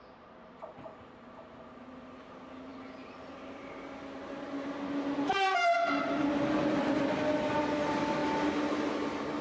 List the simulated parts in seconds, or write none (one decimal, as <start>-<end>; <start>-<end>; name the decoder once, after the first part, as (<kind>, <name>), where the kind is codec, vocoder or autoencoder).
none